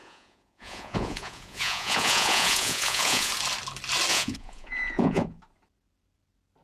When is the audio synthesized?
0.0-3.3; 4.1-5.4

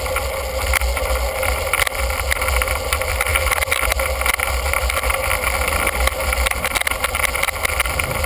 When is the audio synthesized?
none

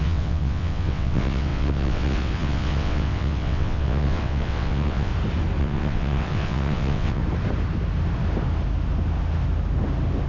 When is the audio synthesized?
0.0-5.1; 5.6-7.2

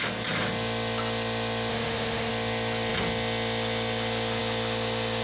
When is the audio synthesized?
1.7-2.3

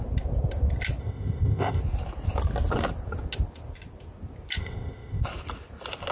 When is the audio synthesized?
1.0-1.8; 4.6-5.2